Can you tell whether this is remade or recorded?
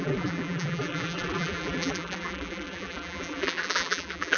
remade